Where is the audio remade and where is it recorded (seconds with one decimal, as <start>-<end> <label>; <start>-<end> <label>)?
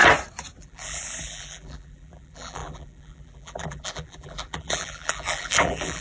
0.0-0.6 recorded; 0.6-6.0 remade